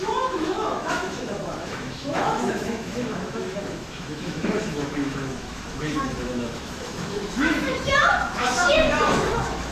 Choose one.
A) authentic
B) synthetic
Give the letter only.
B